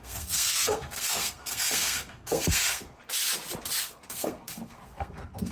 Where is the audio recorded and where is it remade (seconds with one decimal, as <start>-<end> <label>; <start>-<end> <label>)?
0.0-3.0 remade; 3.0-3.8 recorded; 3.8-5.5 remade